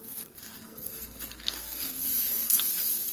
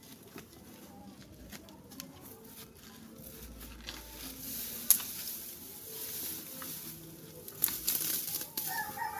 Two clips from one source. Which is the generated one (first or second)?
first